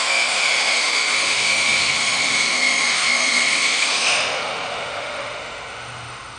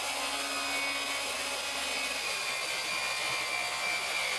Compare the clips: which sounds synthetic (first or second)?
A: first